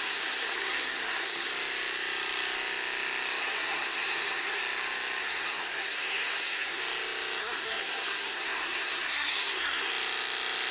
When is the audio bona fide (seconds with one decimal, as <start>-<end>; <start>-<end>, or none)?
1.5-3.4; 4.6-5.2; 6.8-7.4; 9.9-10.7